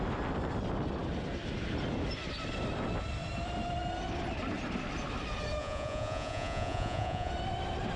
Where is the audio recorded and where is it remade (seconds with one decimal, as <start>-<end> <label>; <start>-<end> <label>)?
0.0-5.6 recorded; 5.6-7.3 remade; 7.3-8.0 recorded